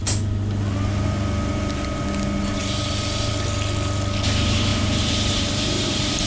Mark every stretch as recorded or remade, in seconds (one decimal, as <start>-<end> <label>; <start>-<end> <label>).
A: 0.0-2.6 recorded; 2.6-3.3 remade; 3.3-4.7 recorded; 4.7-6.3 remade